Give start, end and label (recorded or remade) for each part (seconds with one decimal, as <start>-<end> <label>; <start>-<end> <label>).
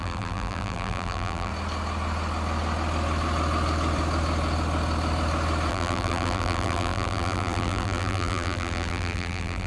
0.0-1.5 remade; 1.5-5.7 recorded; 5.7-9.7 remade